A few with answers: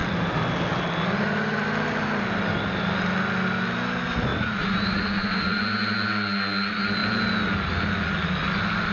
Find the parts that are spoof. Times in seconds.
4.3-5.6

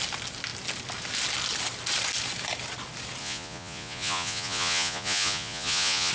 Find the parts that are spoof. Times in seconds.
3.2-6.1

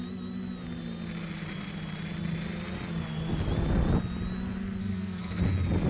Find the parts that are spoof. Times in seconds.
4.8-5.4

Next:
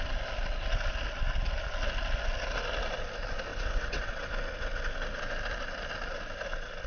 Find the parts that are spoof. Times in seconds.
3.5-4.3

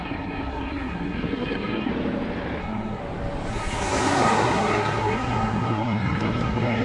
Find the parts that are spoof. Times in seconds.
0.0-1.9; 2.6-3.0; 3.5-6.8